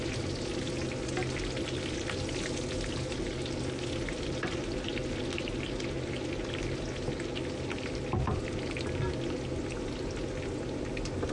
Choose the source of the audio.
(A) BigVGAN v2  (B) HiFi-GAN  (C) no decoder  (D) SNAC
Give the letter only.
C